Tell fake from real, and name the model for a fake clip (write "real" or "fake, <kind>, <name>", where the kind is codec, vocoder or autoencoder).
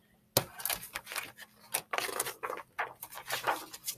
real